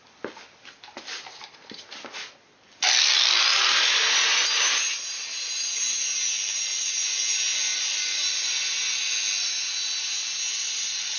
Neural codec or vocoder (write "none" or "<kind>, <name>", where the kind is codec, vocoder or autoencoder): none